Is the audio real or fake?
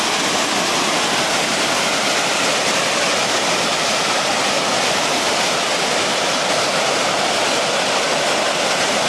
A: real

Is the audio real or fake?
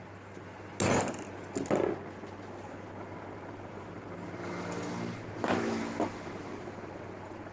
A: real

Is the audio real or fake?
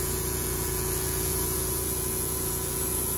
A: fake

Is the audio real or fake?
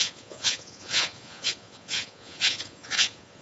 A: fake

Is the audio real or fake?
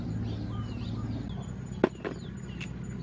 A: real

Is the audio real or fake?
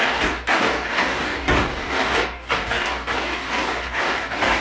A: fake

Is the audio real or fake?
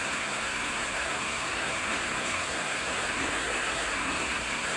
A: fake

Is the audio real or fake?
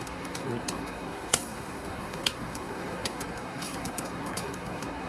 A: fake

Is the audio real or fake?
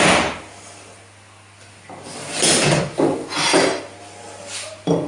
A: real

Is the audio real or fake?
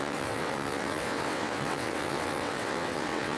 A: fake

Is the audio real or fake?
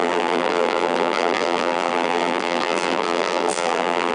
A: fake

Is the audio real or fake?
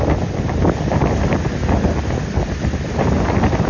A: real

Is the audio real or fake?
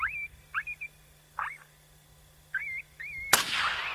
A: fake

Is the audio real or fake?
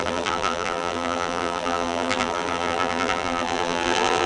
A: fake